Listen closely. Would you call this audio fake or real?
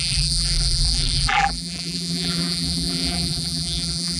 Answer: fake